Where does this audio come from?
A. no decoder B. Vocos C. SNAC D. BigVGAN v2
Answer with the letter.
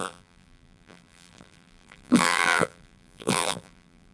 D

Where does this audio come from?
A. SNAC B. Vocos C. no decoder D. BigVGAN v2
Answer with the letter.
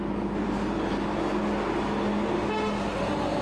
C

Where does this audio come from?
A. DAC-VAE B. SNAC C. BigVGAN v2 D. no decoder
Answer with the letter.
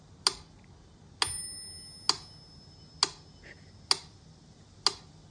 D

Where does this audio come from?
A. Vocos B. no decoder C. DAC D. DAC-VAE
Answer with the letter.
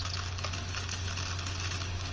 B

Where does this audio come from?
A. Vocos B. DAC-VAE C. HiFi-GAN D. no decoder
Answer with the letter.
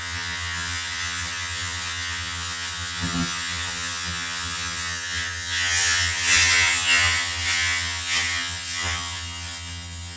C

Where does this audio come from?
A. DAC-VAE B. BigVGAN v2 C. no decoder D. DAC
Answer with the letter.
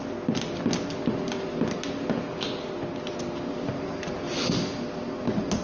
C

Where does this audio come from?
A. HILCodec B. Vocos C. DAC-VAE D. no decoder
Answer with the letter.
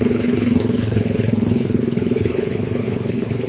A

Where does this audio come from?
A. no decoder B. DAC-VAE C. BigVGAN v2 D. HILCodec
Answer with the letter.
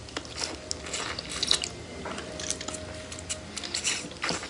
A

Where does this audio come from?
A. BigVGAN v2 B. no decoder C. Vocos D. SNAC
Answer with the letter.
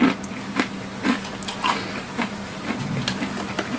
B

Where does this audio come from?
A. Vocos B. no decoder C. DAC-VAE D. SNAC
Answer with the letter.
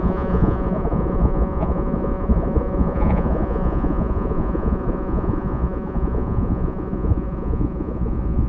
A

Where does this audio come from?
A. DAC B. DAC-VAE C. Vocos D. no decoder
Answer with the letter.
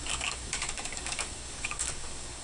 A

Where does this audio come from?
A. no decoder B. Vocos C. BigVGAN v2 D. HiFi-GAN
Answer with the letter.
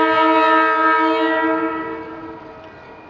A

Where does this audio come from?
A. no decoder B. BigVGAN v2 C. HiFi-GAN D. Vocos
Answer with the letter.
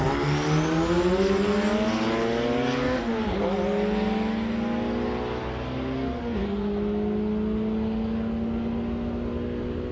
A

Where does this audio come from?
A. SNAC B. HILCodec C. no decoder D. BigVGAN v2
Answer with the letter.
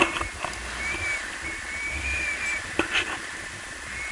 C